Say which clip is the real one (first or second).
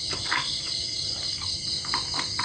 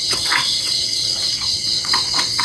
first